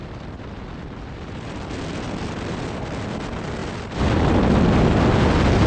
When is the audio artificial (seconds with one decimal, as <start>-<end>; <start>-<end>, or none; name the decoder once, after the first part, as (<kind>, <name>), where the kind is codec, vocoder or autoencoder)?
none